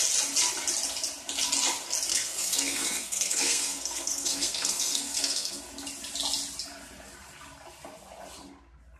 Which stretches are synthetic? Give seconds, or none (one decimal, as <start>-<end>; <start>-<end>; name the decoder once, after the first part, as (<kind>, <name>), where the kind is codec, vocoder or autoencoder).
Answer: 2.1-5.6 (codec, SNAC)